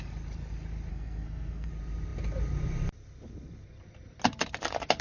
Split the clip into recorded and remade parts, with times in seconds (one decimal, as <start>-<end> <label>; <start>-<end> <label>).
0.0-0.9 recorded; 0.9-1.7 remade; 1.7-5.0 recorded